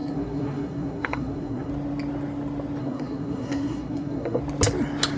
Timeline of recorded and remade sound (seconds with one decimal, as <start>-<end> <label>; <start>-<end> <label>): 0.0-1.7 remade; 1.7-2.8 recorded; 2.8-4.4 remade; 4.4-5.2 recorded